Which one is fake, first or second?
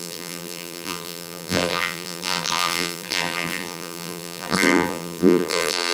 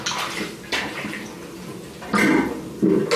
first